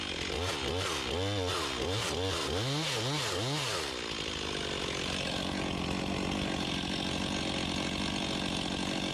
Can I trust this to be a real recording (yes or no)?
yes